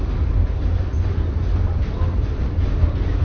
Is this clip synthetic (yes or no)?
no